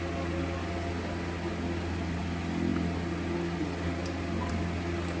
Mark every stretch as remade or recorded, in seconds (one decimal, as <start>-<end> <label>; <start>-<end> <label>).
0.0-5.2 recorded